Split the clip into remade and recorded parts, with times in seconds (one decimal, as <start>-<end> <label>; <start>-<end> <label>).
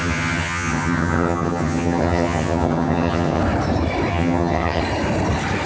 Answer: 0.0-3.4 remade; 3.4-4.1 recorded; 4.1-4.8 remade; 4.8-5.7 recorded